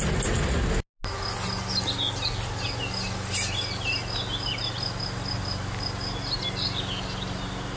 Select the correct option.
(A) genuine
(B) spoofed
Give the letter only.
A